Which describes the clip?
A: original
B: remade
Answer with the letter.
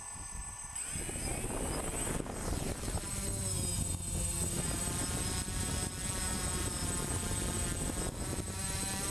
A